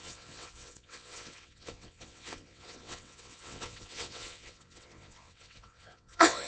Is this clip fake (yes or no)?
yes